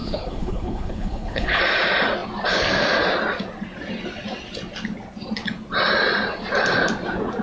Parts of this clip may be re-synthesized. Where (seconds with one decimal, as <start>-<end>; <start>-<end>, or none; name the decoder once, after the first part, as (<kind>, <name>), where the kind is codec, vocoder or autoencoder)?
0.0-1.6 (codec, HILCodec)